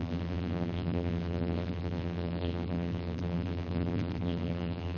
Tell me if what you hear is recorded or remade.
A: remade